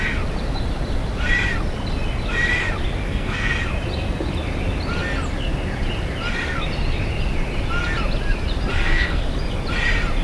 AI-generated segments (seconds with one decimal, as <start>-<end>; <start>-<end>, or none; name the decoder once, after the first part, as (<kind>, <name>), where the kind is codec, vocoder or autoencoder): 3.0-3.6 (codec, SNAC); 8.7-9.2